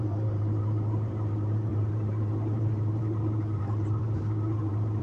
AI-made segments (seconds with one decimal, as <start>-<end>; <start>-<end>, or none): 0.0-5.0